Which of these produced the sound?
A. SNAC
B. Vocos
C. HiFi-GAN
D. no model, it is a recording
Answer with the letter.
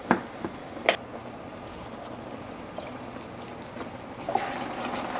D